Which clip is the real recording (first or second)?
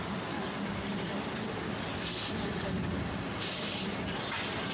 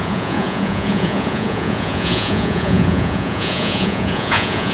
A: first